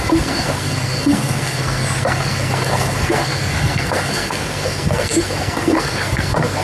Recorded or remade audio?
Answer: remade